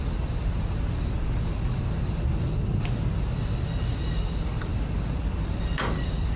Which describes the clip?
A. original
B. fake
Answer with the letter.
A